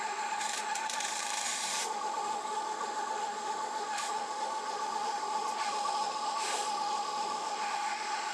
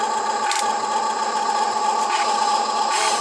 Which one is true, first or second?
second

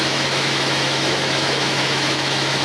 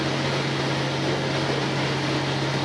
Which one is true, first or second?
second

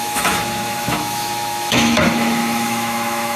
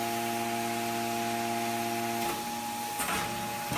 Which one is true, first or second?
second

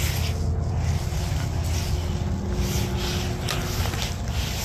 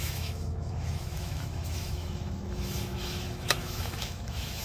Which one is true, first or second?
first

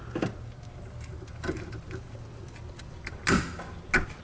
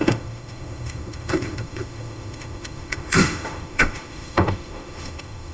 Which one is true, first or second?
first